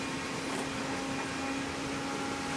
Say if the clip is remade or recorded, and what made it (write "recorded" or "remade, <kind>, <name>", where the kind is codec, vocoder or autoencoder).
recorded